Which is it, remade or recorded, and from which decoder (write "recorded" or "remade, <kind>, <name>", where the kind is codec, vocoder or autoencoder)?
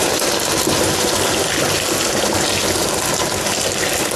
recorded